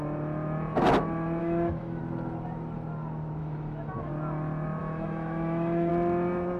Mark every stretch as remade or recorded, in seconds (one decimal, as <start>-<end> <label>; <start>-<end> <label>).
0.0-1.4 recorded; 1.4-2.0 remade; 2.0-3.4 recorded; 3.4-4.1 remade; 4.1-4.8 recorded; 4.8-5.9 remade; 5.9-6.6 recorded